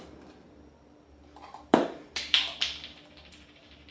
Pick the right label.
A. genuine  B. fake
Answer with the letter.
B